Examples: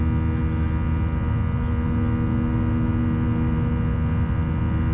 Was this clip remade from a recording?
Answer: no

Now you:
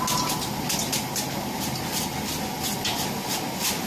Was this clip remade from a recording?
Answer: no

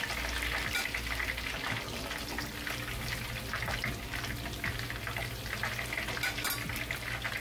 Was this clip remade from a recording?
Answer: no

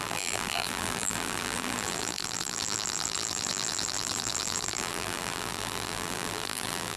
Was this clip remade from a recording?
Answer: yes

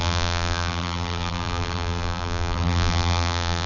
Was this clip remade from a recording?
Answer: yes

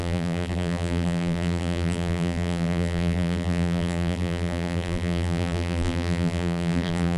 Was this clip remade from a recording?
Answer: yes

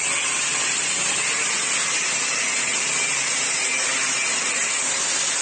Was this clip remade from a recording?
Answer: no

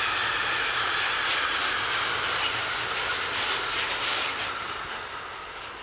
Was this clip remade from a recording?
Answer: no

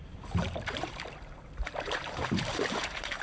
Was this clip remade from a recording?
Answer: yes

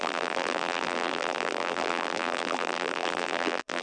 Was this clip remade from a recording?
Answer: yes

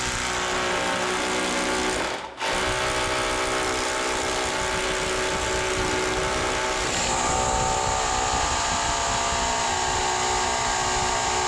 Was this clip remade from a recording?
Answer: no